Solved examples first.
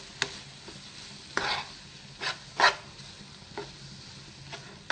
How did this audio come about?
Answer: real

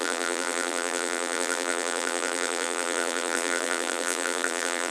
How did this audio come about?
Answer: fake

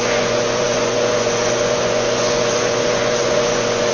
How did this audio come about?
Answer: fake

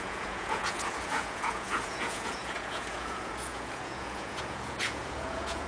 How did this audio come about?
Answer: fake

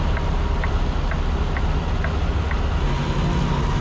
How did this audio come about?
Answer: real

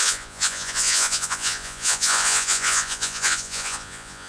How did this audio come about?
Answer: fake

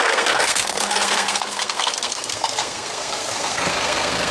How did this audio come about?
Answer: fake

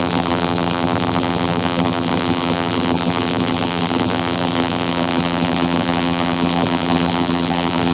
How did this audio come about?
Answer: fake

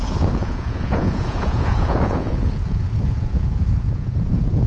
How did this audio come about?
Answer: fake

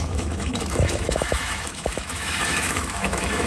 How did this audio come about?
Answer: fake